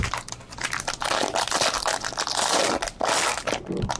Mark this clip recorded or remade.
recorded